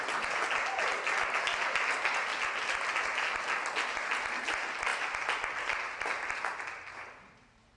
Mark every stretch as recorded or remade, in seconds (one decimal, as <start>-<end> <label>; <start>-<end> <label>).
0.0-7.8 recorded